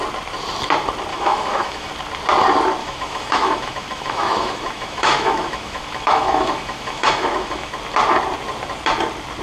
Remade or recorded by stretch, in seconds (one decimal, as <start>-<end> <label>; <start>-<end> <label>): 0.0-1.1 recorded; 1.1-1.9 remade; 1.9-2.8 recorded; 2.8-7.7 remade; 7.7-9.4 recorded